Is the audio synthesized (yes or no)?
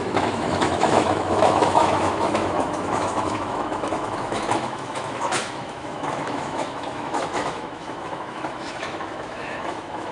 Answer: yes